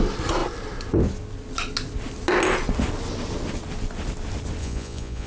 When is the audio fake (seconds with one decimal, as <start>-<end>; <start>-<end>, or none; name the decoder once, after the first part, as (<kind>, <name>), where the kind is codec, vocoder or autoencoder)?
4.6-5.3 (vocoder, Vocos)